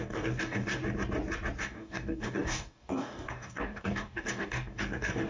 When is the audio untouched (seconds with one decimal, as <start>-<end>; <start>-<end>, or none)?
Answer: 0.8-1.6